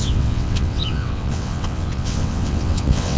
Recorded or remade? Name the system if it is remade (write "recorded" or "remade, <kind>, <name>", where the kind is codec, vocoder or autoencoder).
remade, vocoder, WaveNeXt